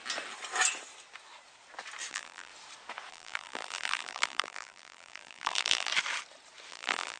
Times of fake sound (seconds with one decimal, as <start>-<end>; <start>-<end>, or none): 2.1-2.5; 3.1-5.9; 6.7-7.2